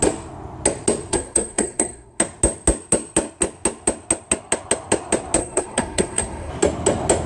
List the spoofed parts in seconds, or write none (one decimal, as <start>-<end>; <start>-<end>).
1.1-2.2; 5.4-6.5

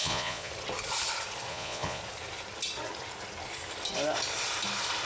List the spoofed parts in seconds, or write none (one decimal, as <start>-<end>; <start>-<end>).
0.0-0.5; 1.5-2.0

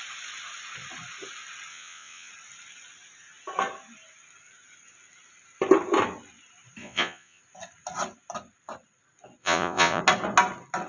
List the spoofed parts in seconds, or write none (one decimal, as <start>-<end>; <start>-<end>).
1.7-2.3; 6.8-7.4; 9.4-10.0